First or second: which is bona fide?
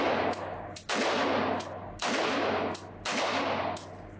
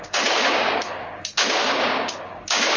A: first